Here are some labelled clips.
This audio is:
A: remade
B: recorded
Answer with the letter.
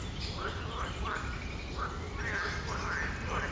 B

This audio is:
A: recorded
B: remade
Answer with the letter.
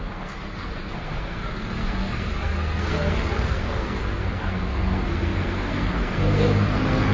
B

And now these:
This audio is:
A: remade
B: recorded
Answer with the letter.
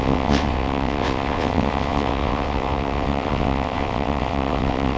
A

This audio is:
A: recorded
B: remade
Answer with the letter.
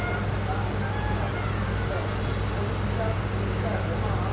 A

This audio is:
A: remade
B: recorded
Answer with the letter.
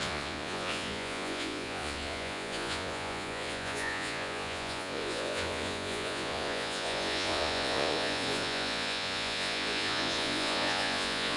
A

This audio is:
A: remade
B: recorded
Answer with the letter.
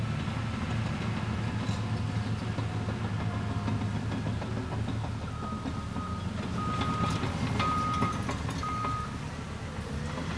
B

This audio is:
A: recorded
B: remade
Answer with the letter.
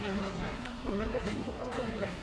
B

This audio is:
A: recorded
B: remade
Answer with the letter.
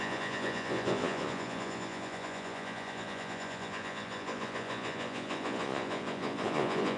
B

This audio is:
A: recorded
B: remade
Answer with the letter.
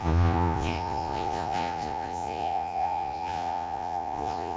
B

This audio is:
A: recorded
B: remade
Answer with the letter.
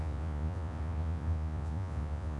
B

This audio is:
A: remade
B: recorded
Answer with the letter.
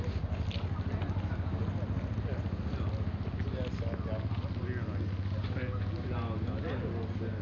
B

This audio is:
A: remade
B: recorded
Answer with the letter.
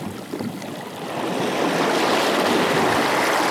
B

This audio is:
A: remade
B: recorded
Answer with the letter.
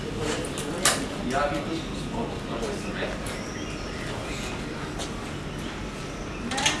B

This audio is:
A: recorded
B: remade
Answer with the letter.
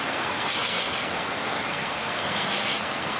B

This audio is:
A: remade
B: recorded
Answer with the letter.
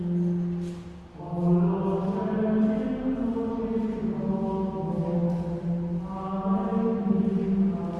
B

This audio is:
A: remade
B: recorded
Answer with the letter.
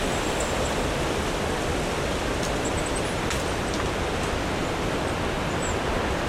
B